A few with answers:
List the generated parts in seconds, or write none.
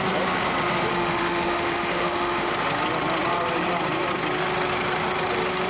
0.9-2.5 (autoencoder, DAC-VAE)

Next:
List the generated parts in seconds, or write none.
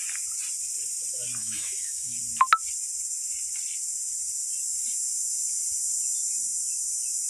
1.4-2.2 (autoencoder, DAC-VAE)